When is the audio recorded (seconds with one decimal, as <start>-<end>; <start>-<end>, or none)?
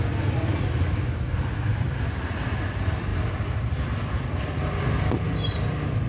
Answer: 0.0-6.1